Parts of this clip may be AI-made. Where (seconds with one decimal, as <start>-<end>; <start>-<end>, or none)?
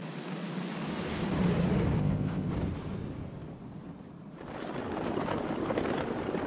2.0-2.5